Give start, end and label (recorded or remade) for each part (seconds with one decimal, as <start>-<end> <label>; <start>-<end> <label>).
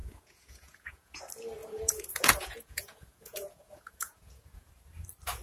0.0-1.2 remade; 1.2-1.6 recorded; 1.6-4.7 remade; 4.7-5.4 recorded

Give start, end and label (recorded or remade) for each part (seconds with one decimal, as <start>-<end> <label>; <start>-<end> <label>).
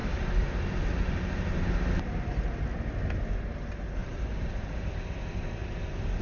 0.0-4.0 recorded; 4.0-4.9 remade; 4.9-6.2 recorded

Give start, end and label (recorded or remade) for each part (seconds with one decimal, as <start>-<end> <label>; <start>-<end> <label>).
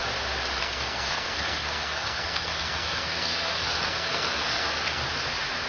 0.0-0.6 recorded; 0.6-5.0 remade; 5.0-5.7 recorded